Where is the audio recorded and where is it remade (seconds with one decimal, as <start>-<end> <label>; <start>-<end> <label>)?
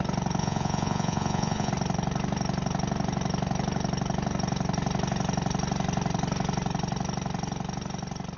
0.0-0.4 recorded; 0.4-1.7 remade; 1.7-8.4 recorded